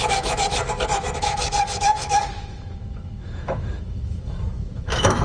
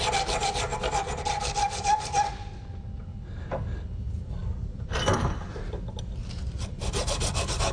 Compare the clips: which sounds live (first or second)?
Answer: second